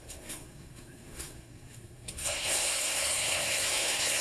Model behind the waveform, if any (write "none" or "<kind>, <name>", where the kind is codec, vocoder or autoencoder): codec, SNAC